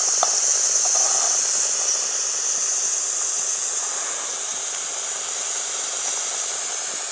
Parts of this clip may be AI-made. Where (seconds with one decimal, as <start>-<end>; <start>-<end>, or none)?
2.9-4.0